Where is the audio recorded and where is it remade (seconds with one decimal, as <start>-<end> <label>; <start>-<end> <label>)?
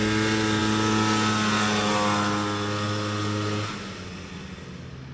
0.0-5.1 recorded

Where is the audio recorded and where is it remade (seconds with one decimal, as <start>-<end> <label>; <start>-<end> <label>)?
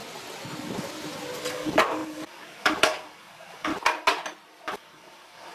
0.0-1.5 recorded; 1.5-3.7 remade; 3.7-4.7 recorded; 4.7-5.5 remade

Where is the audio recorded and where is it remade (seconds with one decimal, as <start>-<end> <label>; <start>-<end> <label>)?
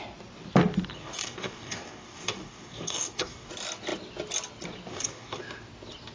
0.0-1.0 recorded; 1.0-3.5 remade; 3.5-4.9 recorded; 4.9-5.4 remade; 5.4-6.1 recorded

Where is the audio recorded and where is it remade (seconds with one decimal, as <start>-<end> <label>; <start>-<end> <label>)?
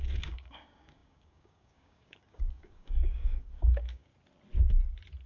0.0-4.1 remade; 4.1-5.3 recorded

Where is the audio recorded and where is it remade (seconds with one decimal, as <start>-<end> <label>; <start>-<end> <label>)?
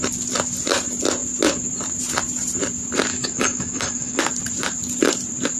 0.0-3.1 recorded; 3.1-4.2 remade; 4.2-5.6 recorded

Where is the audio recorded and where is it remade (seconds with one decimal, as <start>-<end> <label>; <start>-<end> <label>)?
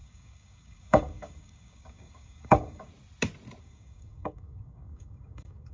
0.0-2.9 remade; 2.9-3.6 recorded; 3.6-5.7 remade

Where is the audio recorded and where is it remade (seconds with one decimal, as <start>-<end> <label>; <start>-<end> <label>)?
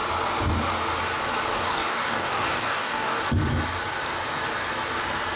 0.0-1.5 recorded; 1.5-3.2 remade; 3.2-5.4 recorded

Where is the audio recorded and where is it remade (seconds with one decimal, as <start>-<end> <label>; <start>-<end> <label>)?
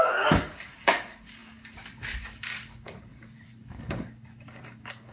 0.0-5.1 remade